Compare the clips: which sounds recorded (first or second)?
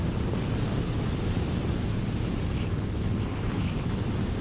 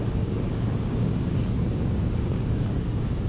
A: first